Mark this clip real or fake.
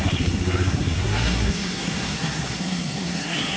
fake